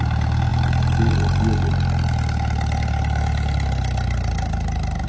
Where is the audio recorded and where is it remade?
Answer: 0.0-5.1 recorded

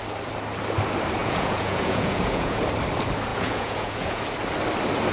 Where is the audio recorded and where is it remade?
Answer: 0.0-1.2 recorded; 1.2-2.6 remade; 2.6-3.3 recorded; 3.3-4.2 remade; 4.2-5.1 recorded

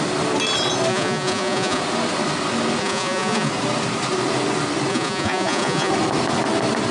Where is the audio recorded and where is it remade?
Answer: 0.0-0.9 recorded; 0.9-1.8 remade; 1.8-2.8 recorded; 2.8-3.5 remade; 3.5-4.9 recorded; 4.9-5.9 remade; 5.9-6.9 recorded